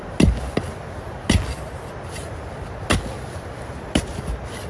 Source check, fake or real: real